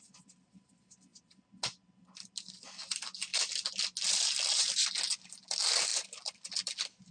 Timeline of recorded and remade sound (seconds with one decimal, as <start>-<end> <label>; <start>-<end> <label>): 0.0-7.1 recorded